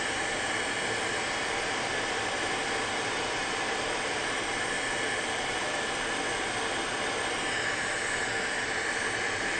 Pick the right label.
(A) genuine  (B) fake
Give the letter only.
A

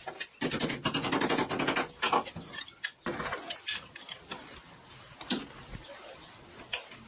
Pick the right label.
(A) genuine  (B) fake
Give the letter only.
A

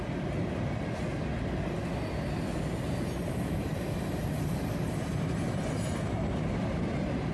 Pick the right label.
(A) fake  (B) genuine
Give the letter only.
B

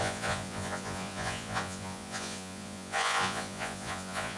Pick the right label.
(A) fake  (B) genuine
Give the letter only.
A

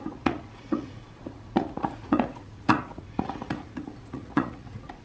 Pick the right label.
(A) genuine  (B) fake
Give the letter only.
B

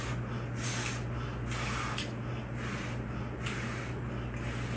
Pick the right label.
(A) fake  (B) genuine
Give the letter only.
B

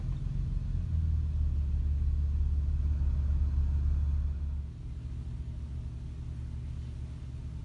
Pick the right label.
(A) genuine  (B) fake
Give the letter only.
A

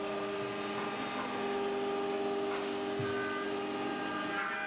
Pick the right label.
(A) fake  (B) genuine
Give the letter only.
B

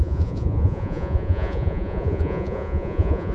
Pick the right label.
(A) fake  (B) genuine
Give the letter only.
A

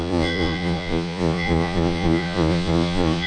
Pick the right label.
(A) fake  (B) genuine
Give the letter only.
A